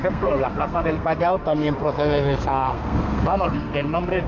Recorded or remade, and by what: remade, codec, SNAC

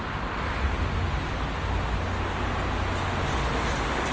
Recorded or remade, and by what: recorded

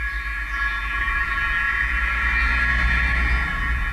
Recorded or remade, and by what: recorded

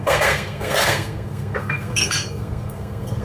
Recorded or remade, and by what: remade, codec, SNAC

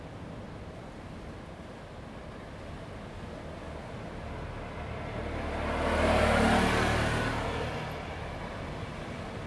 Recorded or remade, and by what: recorded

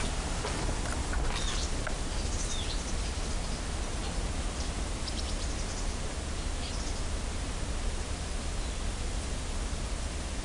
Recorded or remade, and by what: recorded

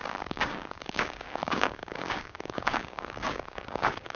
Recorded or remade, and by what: remade, codec, DAC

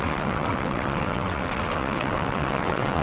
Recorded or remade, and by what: remade, vocoder, WaveNeXt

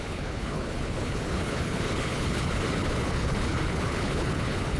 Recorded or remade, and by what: remade, codec, HILCodec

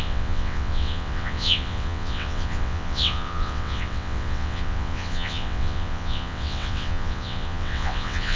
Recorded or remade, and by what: remade, vocoder, WaveNeXt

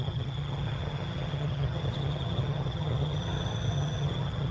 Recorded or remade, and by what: remade, vocoder, HiFi-GAN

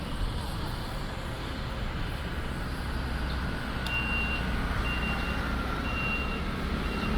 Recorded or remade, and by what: recorded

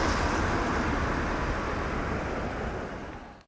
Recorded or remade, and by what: recorded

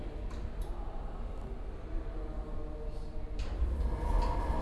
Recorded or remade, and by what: recorded